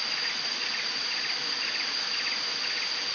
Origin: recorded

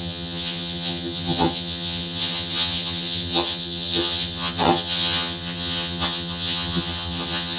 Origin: remade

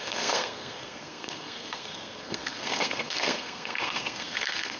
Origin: remade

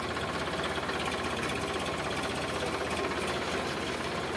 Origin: recorded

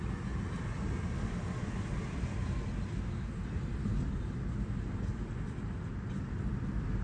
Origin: recorded